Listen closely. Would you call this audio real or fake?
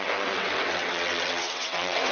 fake